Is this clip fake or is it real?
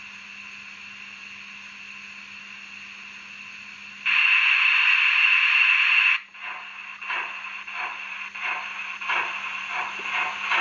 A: real